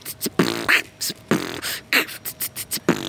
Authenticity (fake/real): real